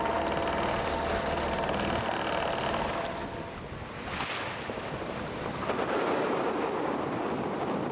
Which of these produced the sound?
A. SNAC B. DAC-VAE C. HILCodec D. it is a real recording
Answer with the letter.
D